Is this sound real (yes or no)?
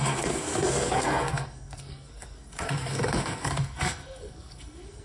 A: no